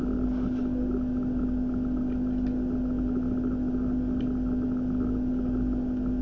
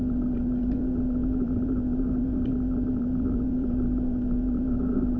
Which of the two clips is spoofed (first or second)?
second